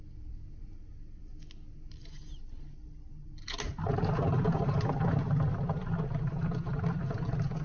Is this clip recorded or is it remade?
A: recorded